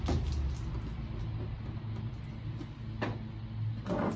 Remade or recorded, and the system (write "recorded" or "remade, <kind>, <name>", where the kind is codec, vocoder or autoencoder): recorded